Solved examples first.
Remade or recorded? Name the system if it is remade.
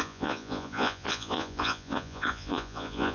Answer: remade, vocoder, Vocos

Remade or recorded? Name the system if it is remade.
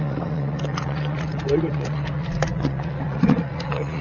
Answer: remade, vocoder, Vocos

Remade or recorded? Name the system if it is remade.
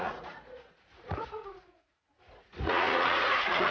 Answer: remade, vocoder, Vocos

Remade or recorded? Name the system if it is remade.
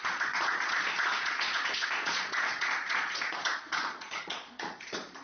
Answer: remade, vocoder, Vocos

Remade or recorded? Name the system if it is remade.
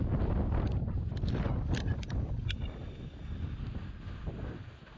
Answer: recorded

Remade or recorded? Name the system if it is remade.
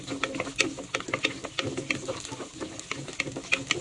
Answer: recorded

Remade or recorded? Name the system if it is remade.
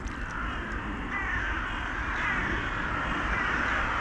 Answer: recorded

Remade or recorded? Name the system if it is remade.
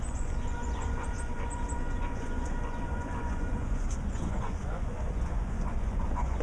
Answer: remade, vocoder, Vocos